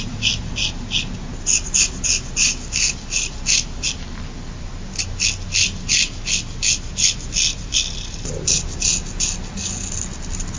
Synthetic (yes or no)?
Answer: no